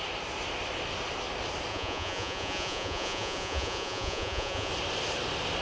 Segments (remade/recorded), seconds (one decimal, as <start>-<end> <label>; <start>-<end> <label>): 0.0-1.7 recorded; 1.7-4.7 remade; 4.7-5.6 recorded